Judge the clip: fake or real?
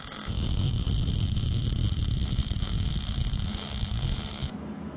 fake